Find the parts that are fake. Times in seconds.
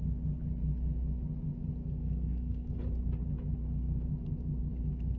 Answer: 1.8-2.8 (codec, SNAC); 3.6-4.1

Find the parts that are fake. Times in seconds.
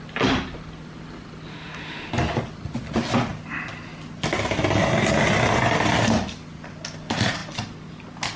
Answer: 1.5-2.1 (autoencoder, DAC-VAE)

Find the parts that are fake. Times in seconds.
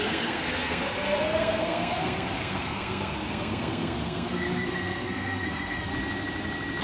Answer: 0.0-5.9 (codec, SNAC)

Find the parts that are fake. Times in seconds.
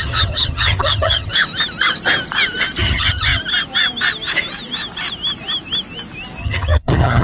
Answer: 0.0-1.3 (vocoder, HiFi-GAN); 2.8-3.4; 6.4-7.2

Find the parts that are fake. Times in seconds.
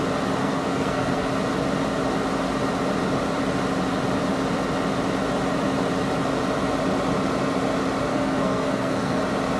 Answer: 0.4-1.3 (codec, SNAC); 8.1-9.2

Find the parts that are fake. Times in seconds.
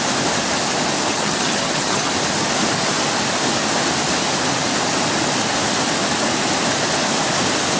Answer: 1.1-2.1 (vocoder, HiFi-GAN)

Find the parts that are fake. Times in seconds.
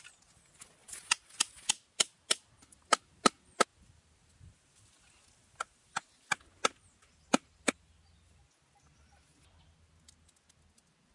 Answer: none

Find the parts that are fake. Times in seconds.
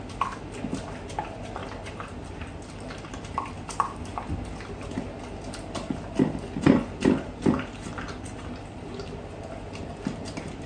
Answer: 1.6-2.3 (vocoder, BigVGAN v2)